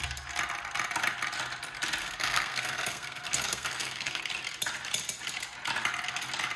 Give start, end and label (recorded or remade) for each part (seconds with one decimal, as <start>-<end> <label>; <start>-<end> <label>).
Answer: 0.0-2.0 recorded; 2.0-4.2 remade; 4.2-6.6 recorded

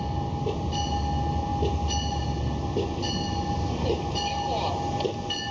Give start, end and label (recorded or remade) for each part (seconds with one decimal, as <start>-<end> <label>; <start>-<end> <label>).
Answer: 0.0-5.5 recorded

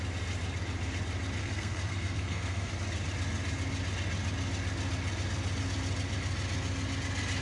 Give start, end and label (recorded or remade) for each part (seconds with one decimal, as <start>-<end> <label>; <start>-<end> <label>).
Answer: 0.0-1.4 recorded; 1.4-2.7 remade; 2.7-7.4 recorded

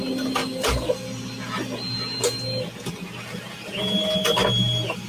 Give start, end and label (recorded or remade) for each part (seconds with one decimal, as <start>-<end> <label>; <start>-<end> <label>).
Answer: 0.0-5.1 recorded